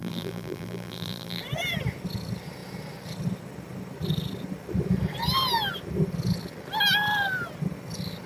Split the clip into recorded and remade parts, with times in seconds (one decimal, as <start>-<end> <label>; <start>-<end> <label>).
0.0-1.4 remade; 1.4-8.3 recorded